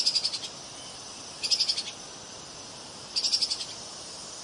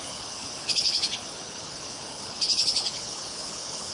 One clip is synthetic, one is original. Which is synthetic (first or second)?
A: second